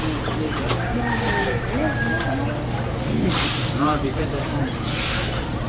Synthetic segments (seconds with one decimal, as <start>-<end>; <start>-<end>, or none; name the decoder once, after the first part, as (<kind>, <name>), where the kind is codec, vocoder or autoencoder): 3.6-4.9 (vocoder, BigVGAN v2)